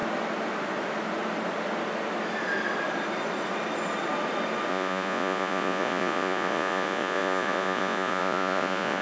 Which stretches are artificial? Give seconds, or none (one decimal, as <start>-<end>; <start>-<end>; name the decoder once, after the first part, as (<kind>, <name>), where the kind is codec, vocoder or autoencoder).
4.7-9.0 (vocoder, Vocos)